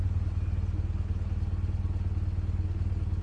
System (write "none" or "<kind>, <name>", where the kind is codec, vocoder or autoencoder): none